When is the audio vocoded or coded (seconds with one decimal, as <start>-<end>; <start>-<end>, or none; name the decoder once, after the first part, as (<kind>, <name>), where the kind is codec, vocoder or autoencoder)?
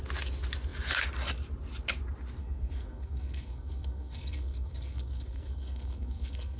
2.4-6.6 (codec, SNAC)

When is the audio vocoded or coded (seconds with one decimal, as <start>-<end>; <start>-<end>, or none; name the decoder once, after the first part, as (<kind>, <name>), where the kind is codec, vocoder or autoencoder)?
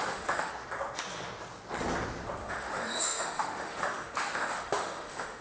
0.0-0.5 (autoencoder, DAC-VAE); 2.4-5.4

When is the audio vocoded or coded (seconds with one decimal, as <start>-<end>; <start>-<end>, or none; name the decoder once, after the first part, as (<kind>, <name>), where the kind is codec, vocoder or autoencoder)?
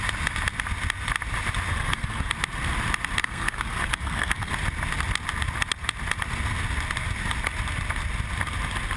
1.7-2.3 (codec, SNAC); 3.2-4.5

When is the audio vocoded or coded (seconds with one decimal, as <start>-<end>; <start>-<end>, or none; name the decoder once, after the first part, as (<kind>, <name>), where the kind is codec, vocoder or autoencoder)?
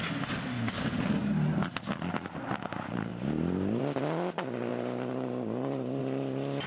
3.1-3.8 (vocoder, BigVGAN v2); 4.7-6.0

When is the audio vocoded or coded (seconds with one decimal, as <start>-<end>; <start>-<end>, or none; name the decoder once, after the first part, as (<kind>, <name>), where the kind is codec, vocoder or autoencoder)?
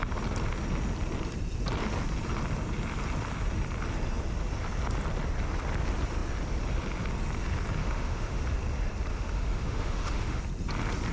7.8-8.4 (autoencoder, DAC-VAE); 9.1-10.4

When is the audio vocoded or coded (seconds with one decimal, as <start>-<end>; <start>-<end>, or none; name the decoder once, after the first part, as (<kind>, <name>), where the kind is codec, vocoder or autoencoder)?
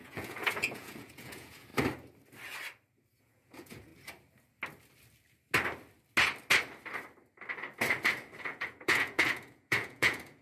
0.0-1.7 (vocoder, Vocos); 3.2-3.9; 8.4-10.4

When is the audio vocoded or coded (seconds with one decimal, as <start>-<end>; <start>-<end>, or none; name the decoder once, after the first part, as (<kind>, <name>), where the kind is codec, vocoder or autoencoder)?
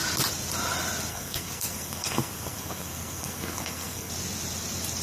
1.1-4.1 (codec, SNAC)